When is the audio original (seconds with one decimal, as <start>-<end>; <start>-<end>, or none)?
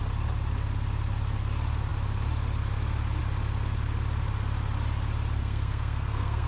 0.0-5.4